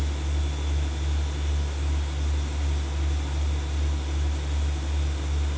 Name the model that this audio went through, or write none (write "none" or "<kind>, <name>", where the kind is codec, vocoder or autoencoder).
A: none